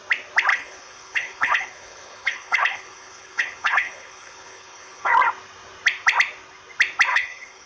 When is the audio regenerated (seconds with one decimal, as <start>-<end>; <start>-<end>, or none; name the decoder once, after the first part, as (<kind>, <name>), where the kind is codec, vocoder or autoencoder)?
0.5-5.1 (codec, HILCodec); 7.1-7.7